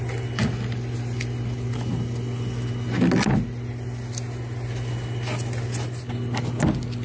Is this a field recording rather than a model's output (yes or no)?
yes